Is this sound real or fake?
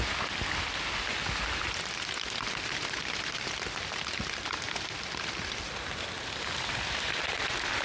real